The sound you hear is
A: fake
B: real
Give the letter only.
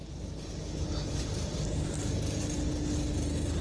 B